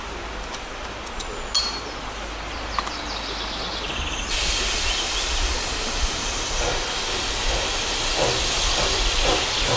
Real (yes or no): yes